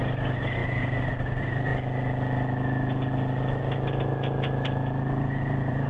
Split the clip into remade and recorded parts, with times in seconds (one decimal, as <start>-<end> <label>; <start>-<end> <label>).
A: 0.0-1.7 remade; 1.7-5.2 recorded; 5.2-5.9 remade